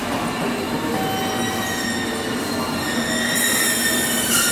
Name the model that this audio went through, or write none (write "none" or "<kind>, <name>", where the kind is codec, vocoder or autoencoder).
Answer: none